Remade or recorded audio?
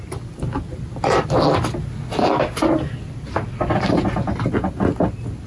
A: recorded